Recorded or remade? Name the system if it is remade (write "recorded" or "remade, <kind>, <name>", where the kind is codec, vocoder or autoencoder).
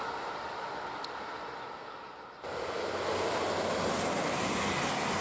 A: recorded